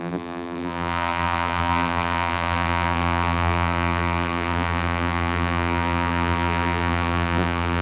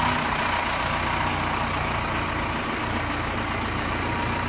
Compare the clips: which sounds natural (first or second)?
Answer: second